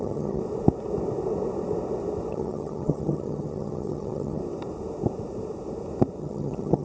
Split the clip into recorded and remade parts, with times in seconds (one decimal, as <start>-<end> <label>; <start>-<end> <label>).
0.0-0.4 remade; 0.4-2.3 recorded; 2.3-4.4 remade; 4.4-6.2 recorded; 6.2-6.8 remade